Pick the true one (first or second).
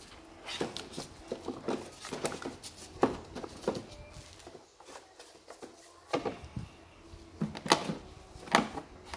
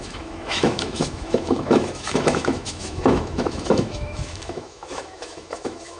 first